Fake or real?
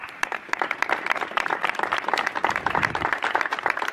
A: fake